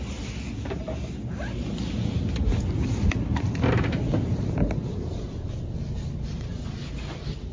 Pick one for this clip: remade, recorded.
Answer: recorded